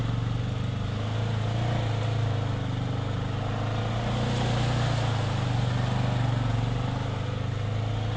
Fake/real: real